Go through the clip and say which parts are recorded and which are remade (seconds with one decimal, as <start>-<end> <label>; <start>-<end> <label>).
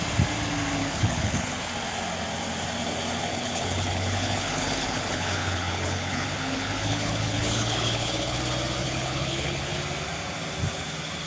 0.0-0.8 recorded; 0.8-1.7 remade; 1.7-3.3 recorded; 3.3-8.4 remade; 8.4-8.8 recorded; 8.8-9.7 remade; 9.7-11.3 recorded